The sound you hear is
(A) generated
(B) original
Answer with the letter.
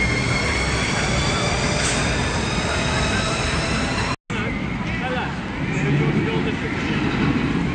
B